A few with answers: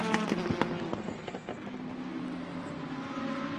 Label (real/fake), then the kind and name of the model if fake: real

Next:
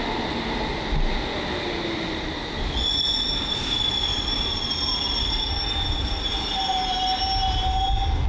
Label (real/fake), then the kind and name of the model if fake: real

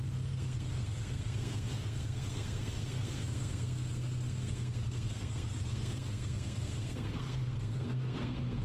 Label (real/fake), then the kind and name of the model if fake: fake, codec, SNAC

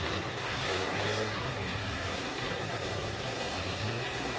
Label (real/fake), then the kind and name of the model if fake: fake, codec, SNAC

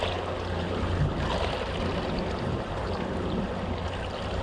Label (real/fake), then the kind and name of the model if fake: real